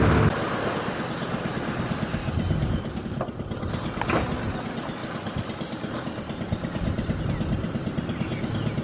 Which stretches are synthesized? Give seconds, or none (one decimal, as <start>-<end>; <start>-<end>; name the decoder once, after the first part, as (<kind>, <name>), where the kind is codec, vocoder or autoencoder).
none